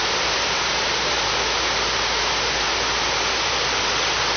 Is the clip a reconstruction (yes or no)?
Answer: no